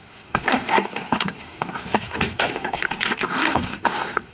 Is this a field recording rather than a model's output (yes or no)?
no